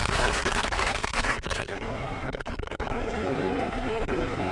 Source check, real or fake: fake